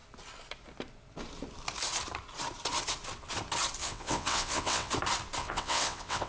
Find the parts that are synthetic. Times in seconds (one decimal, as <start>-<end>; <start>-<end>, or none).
3.8-4.9; 5.4-6.3